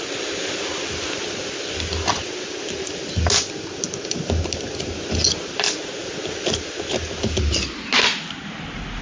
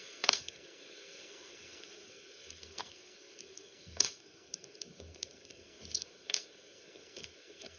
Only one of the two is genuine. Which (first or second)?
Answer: first